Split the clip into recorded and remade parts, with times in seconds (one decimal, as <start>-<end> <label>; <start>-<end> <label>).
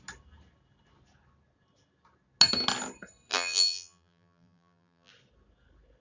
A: 0.0-3.3 recorded; 3.3-5.1 remade; 5.1-6.0 recorded